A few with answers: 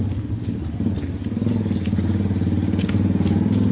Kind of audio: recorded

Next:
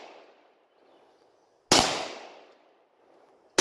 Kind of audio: recorded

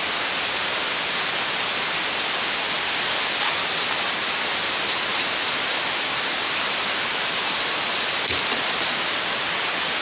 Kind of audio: recorded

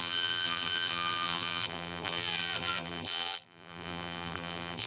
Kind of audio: remade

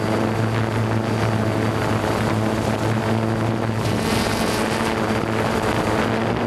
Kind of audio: recorded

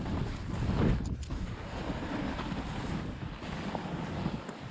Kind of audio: recorded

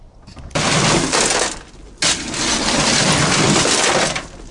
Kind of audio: recorded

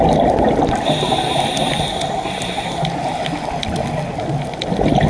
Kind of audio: recorded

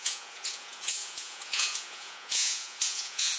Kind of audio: remade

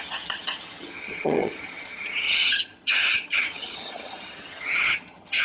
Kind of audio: remade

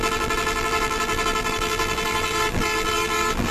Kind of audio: remade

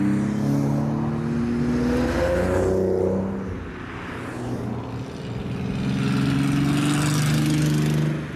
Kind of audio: recorded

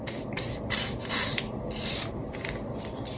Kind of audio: recorded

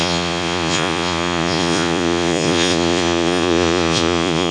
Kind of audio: remade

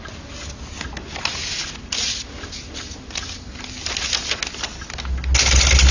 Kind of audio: recorded